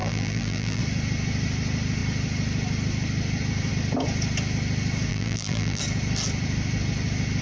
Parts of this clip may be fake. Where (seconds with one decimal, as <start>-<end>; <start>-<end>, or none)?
0.0-0.8; 5.1-5.8